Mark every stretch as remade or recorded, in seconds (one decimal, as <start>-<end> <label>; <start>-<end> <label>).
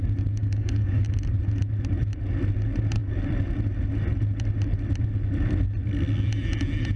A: 0.0-0.4 recorded; 0.4-1.0 remade; 1.0-7.0 recorded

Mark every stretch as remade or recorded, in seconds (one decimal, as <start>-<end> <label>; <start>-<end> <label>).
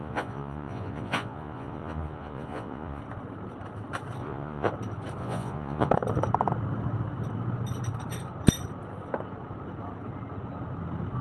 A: 0.0-3.0 remade; 3.0-4.2 recorded; 4.2-4.7 remade; 4.7-5.2 recorded; 5.2-5.9 remade; 5.9-11.2 recorded